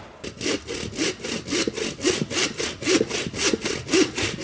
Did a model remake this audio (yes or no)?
no